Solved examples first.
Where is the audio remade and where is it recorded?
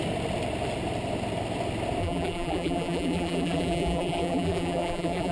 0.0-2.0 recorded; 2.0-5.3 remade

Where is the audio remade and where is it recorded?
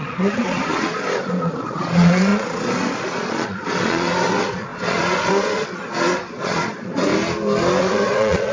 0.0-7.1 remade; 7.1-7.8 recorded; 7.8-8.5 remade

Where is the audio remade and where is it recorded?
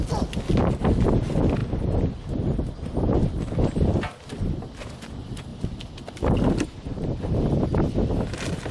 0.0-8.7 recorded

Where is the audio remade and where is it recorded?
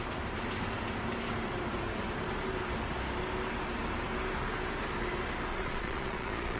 0.0-5.5 recorded; 5.5-6.6 remade